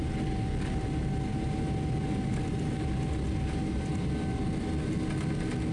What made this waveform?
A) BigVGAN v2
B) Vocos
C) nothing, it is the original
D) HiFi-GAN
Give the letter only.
C